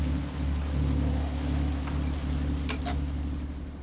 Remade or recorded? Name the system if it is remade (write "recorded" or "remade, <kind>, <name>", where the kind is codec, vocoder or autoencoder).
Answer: recorded